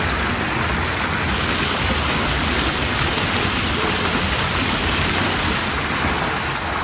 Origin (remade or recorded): recorded